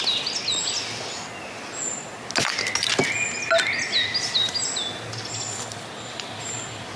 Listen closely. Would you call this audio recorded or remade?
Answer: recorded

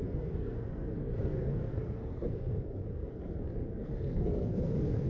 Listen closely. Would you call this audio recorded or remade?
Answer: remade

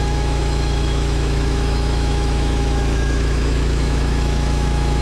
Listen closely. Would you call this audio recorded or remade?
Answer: remade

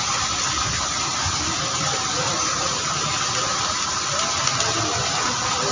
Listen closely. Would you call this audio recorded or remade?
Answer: recorded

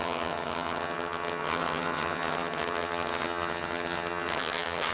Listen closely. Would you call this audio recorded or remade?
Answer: remade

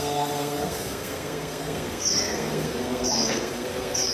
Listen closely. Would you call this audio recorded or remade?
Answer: remade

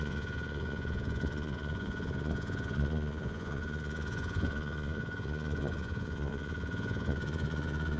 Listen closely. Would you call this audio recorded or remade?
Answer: remade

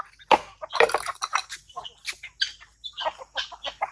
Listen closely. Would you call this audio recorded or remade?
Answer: recorded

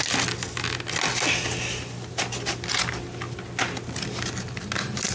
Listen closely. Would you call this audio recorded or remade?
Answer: recorded